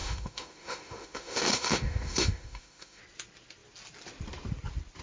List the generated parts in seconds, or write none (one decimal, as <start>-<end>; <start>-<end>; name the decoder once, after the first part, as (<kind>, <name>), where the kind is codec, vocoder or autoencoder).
0.0-3.0 (autoencoder, DAC-VAE)